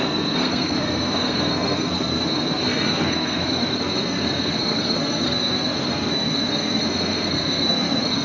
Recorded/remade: remade